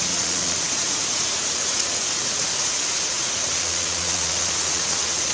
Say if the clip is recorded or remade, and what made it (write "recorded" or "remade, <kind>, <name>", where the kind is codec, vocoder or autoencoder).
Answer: remade, vocoder, Vocos